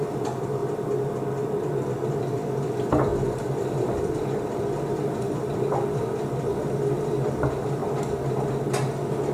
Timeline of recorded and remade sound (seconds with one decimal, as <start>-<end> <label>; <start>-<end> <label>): 0.0-0.6 remade; 0.6-2.1 recorded; 2.1-7.8 remade; 7.8-9.3 recorded

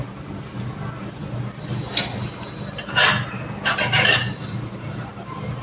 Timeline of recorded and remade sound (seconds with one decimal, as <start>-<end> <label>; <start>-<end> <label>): 0.0-4.3 recorded; 4.3-5.6 remade

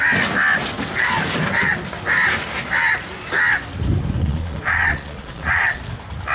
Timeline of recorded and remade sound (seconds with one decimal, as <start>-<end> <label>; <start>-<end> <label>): 0.0-4.2 recorded; 4.2-5.8 remade; 5.8-6.3 recorded